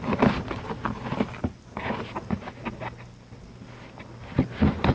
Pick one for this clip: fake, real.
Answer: real